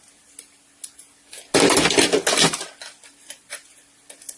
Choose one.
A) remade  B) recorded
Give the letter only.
B